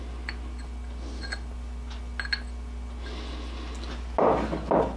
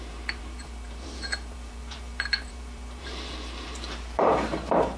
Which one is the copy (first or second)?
second